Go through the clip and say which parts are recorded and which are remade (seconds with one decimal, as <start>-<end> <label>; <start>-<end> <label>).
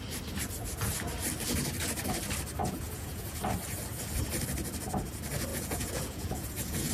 0.0-2.6 recorded; 2.6-3.4 remade; 3.4-5.5 recorded; 5.5-6.9 remade